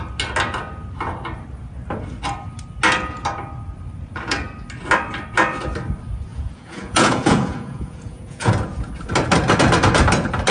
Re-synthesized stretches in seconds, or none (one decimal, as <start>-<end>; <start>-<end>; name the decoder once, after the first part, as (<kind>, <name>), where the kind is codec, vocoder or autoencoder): 6.3-8.5 (vocoder, Vocos)